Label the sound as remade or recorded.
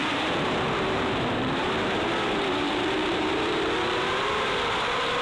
remade